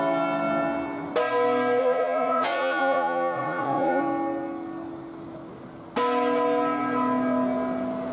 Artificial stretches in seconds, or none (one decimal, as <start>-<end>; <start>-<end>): 1.8-4.0